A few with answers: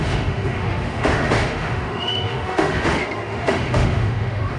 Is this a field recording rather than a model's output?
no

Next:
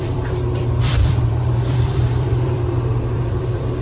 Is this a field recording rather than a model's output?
no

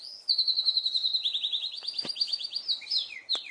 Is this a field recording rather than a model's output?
yes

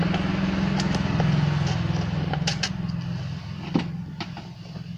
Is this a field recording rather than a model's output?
yes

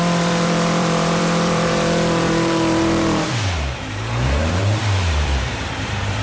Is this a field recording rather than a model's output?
no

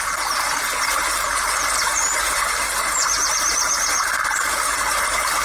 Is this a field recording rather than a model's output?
yes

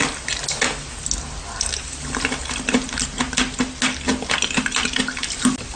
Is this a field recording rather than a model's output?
yes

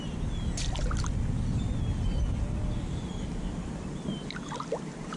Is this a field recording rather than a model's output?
yes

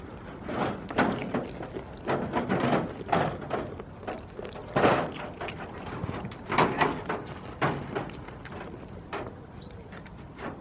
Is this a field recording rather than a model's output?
yes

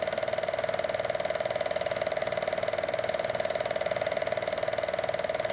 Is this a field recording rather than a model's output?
yes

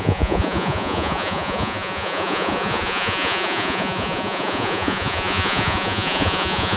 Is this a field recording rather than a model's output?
no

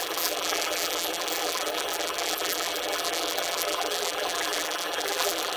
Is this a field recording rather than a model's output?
no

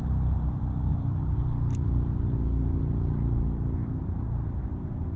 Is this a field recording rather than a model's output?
no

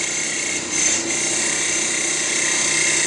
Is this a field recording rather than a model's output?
yes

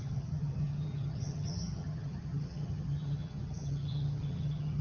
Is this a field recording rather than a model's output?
no